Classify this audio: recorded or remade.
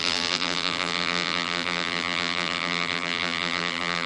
remade